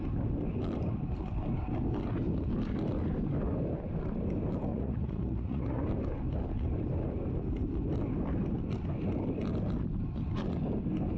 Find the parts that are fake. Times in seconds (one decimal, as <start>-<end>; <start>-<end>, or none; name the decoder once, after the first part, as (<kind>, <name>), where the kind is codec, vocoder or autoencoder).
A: 4.7-5.8 (vocoder, Vocos)